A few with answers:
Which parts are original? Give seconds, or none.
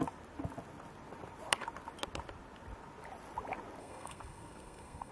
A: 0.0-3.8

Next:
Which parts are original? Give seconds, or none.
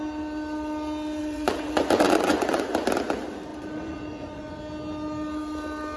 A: 0.0-1.2; 2.6-3.5; 4.6-6.0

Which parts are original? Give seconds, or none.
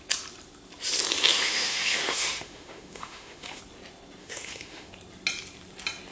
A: 0.0-1.3; 3.6-4.2; 4.9-6.1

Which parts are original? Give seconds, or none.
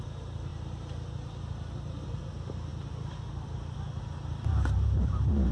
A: 2.7-4.0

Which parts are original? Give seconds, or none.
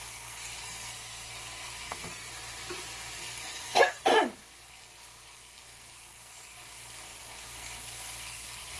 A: 2.3-3.2; 4.1-4.7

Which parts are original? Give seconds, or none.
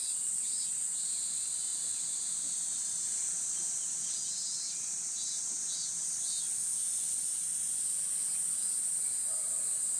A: 0.0-10.0